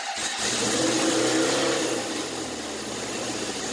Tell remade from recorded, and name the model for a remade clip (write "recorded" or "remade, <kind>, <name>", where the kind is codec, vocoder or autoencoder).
recorded